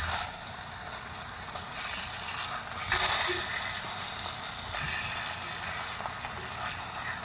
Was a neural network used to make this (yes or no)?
no